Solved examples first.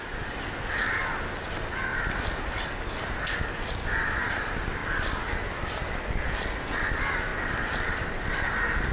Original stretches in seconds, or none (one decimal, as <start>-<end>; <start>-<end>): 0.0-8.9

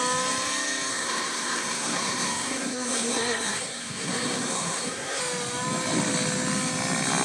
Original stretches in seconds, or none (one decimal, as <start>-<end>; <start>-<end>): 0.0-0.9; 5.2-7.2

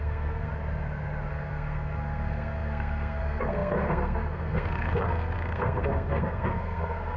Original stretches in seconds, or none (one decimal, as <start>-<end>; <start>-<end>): 0.5-1.3

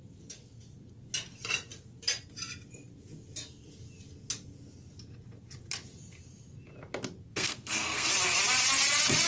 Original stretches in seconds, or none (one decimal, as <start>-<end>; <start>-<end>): 0.0-7.3; 8.1-9.3

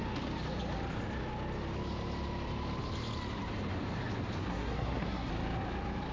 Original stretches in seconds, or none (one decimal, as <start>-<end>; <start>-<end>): 0.0-4.4; 5.3-6.1